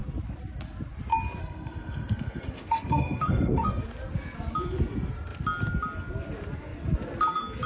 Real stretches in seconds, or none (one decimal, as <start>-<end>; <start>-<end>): 0.0-1.4; 3.8-7.7